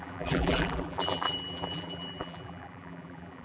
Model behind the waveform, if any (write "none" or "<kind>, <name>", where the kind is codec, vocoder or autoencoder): vocoder, BigVGAN v2